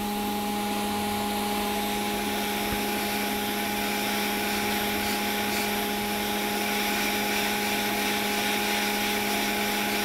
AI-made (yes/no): no